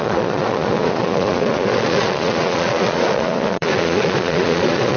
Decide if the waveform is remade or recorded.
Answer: remade